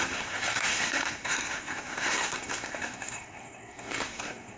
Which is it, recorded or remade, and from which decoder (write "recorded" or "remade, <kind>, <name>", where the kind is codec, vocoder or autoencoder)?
remade, codec, SNAC